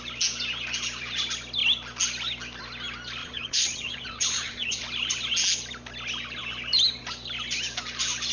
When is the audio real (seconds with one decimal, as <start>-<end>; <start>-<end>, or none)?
0.0-3.2; 4.8-8.3